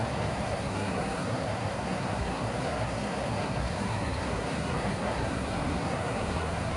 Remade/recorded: remade